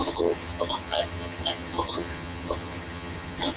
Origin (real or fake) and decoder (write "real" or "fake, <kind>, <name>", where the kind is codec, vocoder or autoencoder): fake, vocoder, HiFi-GAN